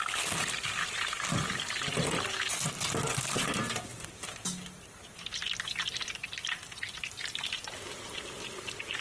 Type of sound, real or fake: real